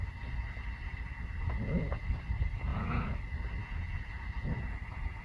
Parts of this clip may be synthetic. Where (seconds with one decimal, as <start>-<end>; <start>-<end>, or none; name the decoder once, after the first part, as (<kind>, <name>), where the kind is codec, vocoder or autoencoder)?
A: 1.4-2.1 (vocoder, Vocos); 2.7-3.2; 3.6-4.7